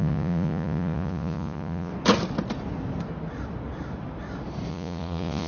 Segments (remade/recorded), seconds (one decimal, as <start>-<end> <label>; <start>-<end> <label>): 0.0-1.9 remade; 1.9-4.7 recorded; 4.7-5.5 remade